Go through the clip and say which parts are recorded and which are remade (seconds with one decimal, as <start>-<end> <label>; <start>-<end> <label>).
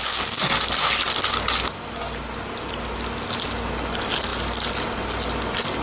0.0-5.8 recorded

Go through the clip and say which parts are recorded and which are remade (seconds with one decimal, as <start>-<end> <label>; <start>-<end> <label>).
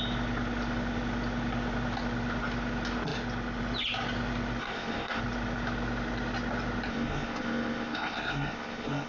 0.0-4.6 recorded; 4.6-5.2 remade; 5.2-6.9 recorded; 6.9-9.1 remade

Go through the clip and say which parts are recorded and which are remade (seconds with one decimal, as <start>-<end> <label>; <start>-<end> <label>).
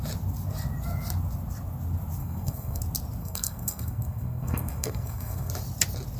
0.0-2.2 recorded; 2.2-2.8 remade; 2.8-3.2 recorded; 3.2-5.5 remade; 5.5-6.2 recorded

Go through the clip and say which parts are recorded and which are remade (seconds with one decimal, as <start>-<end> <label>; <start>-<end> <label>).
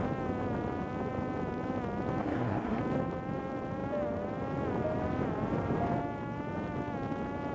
0.0-2.2 recorded; 2.2-2.8 remade; 2.8-7.5 recorded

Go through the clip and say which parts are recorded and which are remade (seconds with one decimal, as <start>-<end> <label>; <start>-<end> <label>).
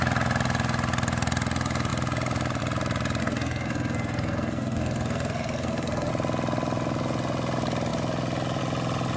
0.0-3.2 recorded; 3.2-6.1 remade; 6.1-9.2 recorded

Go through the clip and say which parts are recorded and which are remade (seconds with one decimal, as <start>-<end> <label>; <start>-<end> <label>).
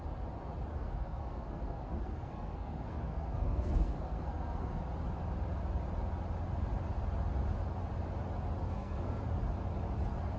0.0-0.7 recorded; 0.7-4.8 remade; 4.8-8.6 recorded; 8.6-9.2 remade; 9.2-10.4 recorded